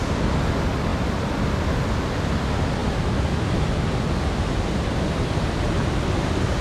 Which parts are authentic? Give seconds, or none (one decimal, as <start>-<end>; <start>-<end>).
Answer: 0.0-0.9; 1.8-6.6